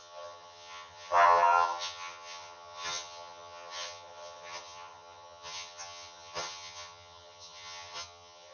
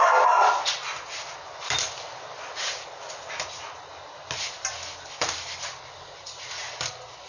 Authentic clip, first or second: second